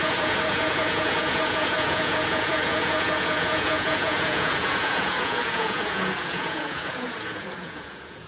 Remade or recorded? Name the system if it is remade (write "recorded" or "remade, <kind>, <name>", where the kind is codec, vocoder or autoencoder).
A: remade, vocoder, Vocos